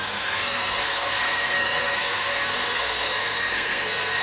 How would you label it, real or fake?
fake